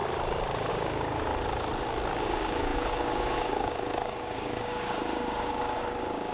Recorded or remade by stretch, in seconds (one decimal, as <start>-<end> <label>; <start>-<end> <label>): 0.0-0.7 recorded; 0.7-1.3 remade; 1.3-2.2 recorded; 2.2-6.3 remade